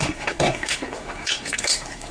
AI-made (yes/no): yes